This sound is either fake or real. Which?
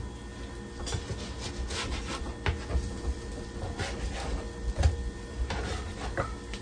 real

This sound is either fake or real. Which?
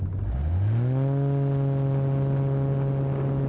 real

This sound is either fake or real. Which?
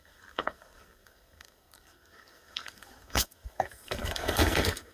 fake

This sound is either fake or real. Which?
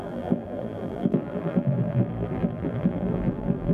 fake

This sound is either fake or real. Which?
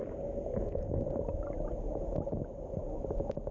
real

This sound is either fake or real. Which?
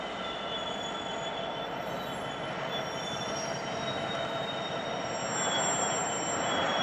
real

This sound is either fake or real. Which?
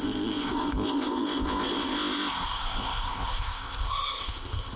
fake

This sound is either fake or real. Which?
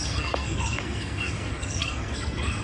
fake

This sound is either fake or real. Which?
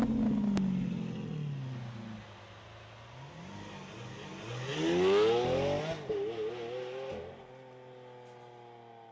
real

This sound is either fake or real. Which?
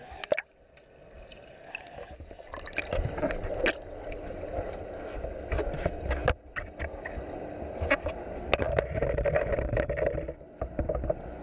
real